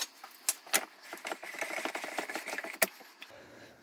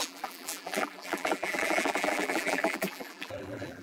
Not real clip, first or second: second